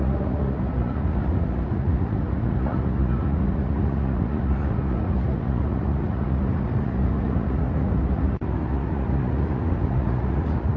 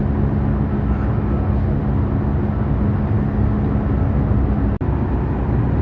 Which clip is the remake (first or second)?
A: first